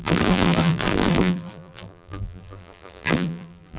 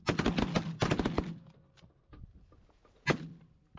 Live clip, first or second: second